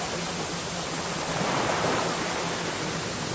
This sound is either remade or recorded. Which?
recorded